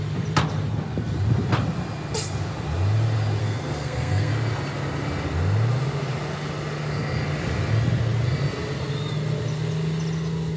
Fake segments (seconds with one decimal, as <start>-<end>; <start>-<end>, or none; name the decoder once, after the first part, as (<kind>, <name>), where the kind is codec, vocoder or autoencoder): 3.4-4.3 (codec, SNAC)